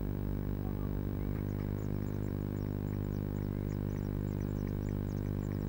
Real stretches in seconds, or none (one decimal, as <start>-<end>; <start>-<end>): 0.0-1.8; 2.3-3.5